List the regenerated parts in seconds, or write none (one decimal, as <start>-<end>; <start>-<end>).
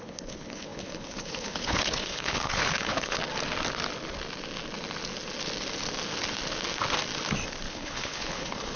0.0-3.2; 7.7-8.8